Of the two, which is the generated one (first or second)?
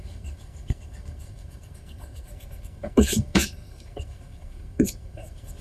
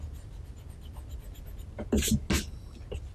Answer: first